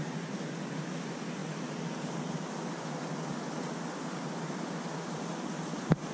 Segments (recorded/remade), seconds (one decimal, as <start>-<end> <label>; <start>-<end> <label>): 0.0-6.1 recorded